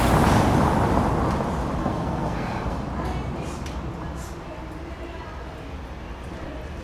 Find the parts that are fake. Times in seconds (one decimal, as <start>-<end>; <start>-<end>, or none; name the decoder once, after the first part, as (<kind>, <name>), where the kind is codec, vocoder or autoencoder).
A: 1.8-2.8 (codec, SNAC)